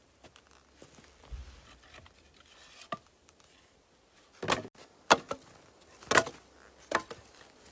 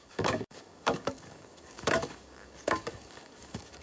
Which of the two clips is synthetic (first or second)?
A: second